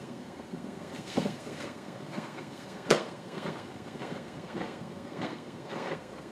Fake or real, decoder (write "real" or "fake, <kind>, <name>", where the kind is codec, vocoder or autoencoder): fake, codec, SNAC